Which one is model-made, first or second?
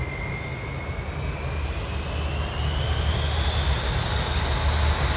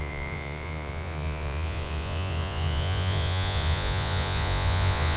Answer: second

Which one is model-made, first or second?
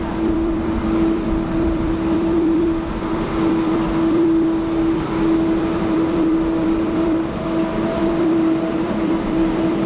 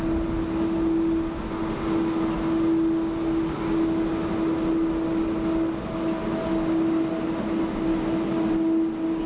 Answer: first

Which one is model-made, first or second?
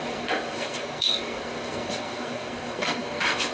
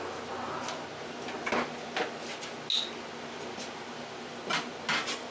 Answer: first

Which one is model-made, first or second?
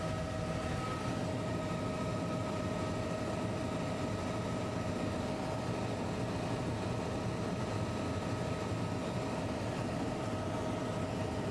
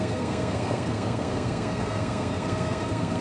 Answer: second